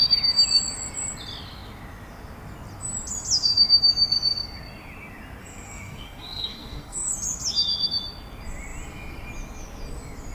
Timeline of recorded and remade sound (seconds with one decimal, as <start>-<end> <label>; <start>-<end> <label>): 0.0-5.4 recorded; 5.4-7.1 remade; 7.1-10.3 recorded